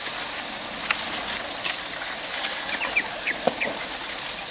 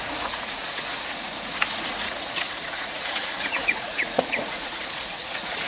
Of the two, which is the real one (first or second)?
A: first